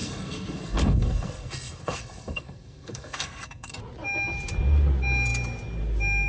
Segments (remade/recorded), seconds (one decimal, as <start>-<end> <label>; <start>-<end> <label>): 0.0-3.8 remade; 3.8-6.3 recorded